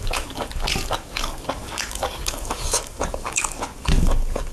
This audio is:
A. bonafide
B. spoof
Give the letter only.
B